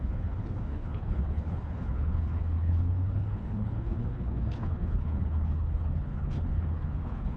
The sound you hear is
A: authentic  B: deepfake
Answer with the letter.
B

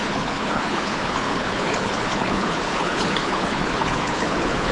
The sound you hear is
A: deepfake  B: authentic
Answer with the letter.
A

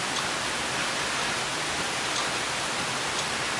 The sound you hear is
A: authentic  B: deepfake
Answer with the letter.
A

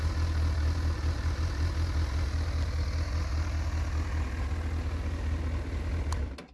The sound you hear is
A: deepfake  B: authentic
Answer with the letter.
B